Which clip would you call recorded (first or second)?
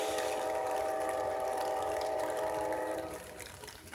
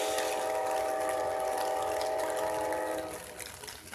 second